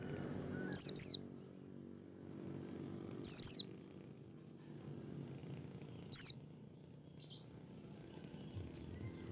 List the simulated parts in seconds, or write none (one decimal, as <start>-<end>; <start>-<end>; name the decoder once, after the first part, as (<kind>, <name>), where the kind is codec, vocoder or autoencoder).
1.1-3.4 (vocoder, BigVGAN v2)